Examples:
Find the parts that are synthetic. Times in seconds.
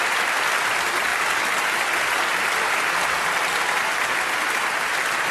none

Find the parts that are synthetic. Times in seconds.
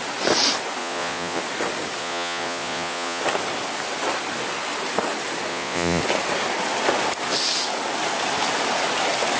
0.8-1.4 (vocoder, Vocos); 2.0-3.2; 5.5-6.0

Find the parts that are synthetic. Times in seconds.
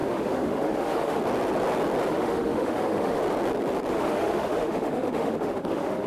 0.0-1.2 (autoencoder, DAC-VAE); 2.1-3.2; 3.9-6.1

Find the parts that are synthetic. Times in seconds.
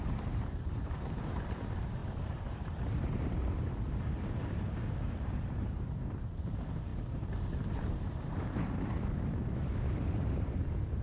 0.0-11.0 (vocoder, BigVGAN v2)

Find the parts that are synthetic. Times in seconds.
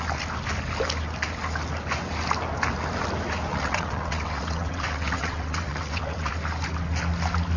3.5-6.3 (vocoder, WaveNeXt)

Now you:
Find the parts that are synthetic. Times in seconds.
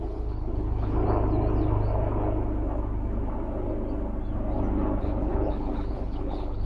0.0-1.0 (codec, HILCodec); 5.0-6.7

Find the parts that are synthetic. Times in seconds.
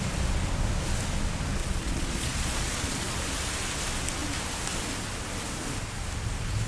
1.6-3.2 (vocoder, Vocos)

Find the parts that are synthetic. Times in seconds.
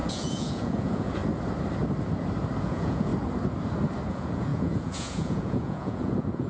0.0-1.2 (vocoder, Vocos); 2.6-3.1; 4.1-6.5